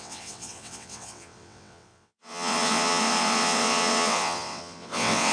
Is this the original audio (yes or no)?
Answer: no